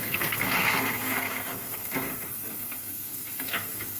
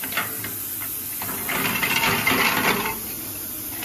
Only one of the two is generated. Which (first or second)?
first